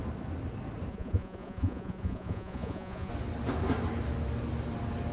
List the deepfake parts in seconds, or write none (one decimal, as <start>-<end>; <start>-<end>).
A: 0.9-3.1